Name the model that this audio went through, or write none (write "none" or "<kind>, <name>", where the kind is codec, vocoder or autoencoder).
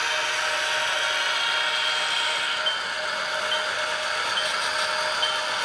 none